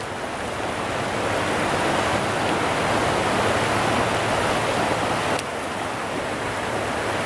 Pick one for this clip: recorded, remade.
recorded